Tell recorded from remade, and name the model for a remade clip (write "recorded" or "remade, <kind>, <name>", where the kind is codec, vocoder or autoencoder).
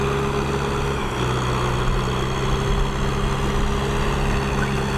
recorded